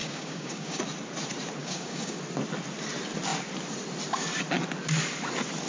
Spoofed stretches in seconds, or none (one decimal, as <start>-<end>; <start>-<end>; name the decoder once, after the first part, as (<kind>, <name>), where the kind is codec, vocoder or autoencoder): 0.0-0.8 (codec, DAC); 1.6-2.2